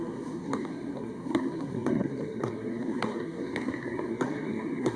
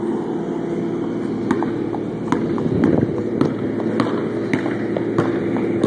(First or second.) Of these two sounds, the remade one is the first